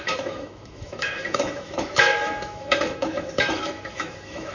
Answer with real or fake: fake